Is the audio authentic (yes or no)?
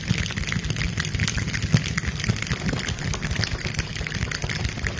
yes